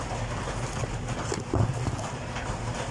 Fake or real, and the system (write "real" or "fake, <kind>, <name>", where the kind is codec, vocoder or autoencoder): real